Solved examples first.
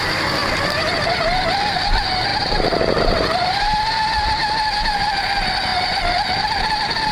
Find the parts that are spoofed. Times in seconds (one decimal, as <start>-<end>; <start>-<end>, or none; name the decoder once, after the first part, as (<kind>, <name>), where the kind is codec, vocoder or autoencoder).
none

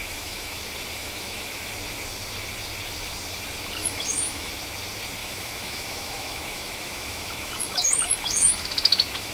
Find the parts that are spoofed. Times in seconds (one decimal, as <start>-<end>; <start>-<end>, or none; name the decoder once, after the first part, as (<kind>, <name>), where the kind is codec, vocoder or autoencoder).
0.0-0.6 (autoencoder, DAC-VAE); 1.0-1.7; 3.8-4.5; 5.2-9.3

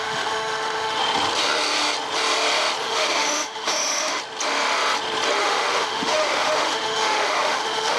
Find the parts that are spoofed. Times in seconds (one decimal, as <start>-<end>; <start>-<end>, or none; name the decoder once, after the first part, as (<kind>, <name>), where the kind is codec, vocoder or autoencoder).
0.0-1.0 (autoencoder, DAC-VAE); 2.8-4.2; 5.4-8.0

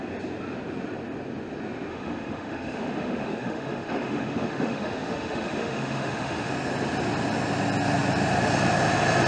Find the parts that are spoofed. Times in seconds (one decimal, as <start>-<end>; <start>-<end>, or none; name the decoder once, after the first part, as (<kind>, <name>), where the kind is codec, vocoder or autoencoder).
1.9-6.5 (autoencoder, DAC-VAE)